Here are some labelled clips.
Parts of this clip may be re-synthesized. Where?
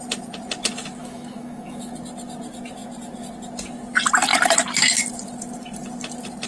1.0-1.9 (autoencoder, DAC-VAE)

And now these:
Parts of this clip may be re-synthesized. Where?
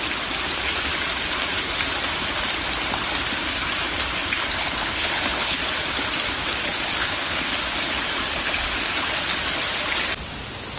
4.2-5.6 (codec, HILCodec); 7.0-7.5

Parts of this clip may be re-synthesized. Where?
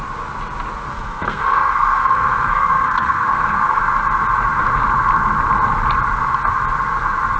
0.9-3.8 (codec, SNAC)